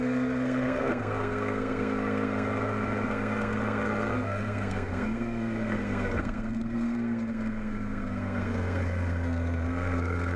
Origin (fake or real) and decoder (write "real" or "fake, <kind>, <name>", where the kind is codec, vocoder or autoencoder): fake, codec, SNAC